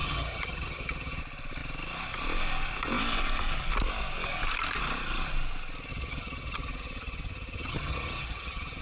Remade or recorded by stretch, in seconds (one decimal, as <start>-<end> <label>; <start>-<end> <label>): 0.0-1.2 remade; 1.2-5.9 recorded; 5.9-8.8 remade